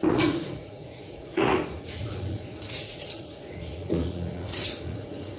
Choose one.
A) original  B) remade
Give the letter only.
B